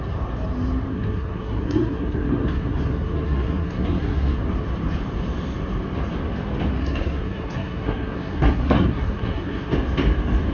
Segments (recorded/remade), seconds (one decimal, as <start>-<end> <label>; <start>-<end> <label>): 0.0-0.9 recorded; 0.9-4.4 remade; 4.4-6.8 recorded; 6.8-9.7 remade; 9.7-10.5 recorded